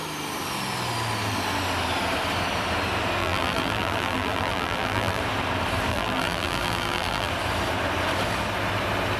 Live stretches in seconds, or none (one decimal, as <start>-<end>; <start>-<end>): 0.0-3.2; 5.2-5.9; 7.3-9.2